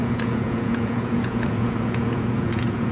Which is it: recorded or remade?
remade